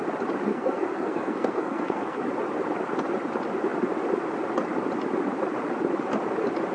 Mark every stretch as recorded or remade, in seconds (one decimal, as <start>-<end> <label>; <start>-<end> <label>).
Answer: 0.0-0.5 recorded; 0.5-2.2 remade; 2.2-6.7 recorded